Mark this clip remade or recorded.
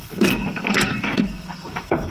remade